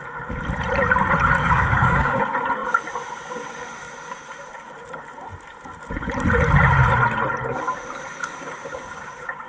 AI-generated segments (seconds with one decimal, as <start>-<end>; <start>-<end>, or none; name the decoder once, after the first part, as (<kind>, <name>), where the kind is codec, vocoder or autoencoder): 1.4-2.2 (codec, DAC); 8.2-9.5